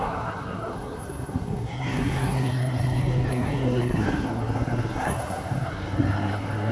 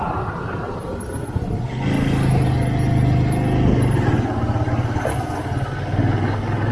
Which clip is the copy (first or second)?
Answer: first